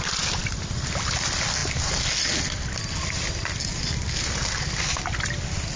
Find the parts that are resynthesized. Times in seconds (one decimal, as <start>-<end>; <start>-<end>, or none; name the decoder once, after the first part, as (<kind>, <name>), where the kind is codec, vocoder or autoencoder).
none